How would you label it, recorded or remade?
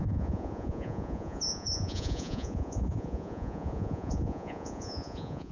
remade